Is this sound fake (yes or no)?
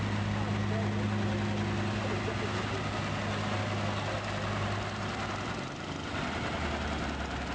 no